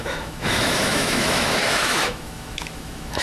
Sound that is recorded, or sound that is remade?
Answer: remade